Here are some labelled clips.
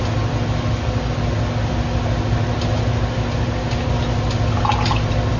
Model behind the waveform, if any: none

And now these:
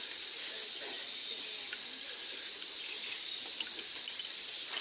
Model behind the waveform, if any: none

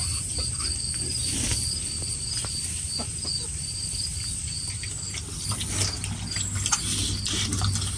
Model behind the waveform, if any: none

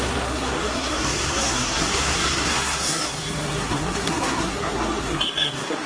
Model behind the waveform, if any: codec, SNAC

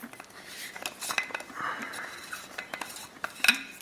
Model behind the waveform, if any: none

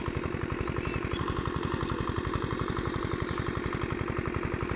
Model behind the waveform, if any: none